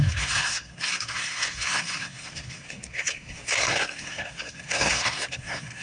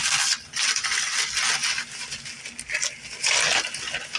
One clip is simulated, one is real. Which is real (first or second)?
second